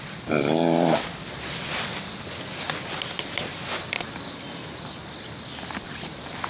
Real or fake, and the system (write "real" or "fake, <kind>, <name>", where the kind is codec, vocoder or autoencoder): real